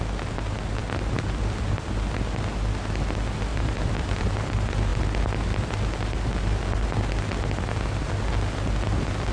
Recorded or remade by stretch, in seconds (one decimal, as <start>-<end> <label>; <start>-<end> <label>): 0.0-0.8 recorded; 0.8-1.9 remade; 1.9-3.5 recorded; 3.5-4.2 remade; 4.2-9.3 recorded